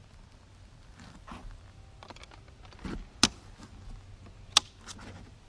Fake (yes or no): no